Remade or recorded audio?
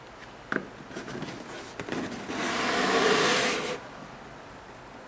recorded